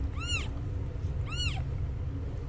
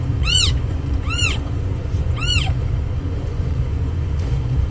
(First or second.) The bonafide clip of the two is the first